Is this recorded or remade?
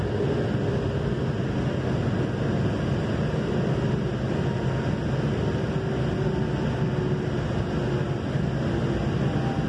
recorded